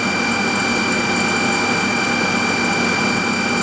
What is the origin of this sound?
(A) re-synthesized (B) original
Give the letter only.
B